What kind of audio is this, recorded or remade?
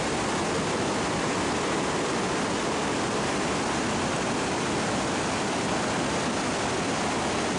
recorded